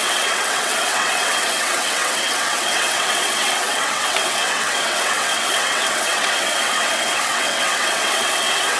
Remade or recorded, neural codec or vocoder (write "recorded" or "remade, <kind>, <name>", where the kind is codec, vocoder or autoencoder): remade, vocoder, WaveNeXt